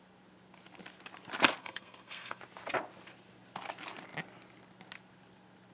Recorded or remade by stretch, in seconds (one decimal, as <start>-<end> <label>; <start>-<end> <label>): 0.0-1.6 recorded; 1.6-2.4 remade; 2.4-5.7 recorded